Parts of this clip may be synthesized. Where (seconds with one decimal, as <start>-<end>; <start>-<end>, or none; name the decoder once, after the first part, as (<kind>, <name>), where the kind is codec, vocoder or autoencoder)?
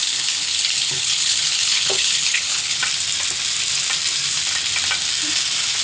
0.0-2.8 (codec, HILCodec)